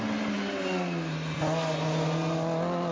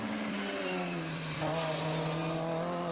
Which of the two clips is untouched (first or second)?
first